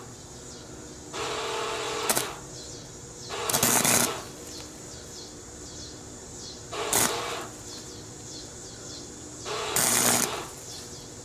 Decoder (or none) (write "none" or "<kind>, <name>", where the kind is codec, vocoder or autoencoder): vocoder, BigVGAN v2